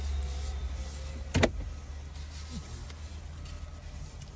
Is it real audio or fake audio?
real